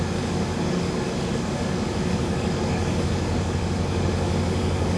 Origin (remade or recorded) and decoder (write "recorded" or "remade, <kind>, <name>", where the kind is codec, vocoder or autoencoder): remade, codec, DAC